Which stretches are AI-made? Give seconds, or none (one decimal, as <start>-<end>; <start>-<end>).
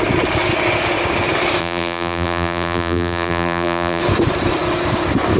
1.6-4.0